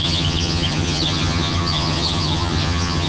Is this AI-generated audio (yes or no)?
yes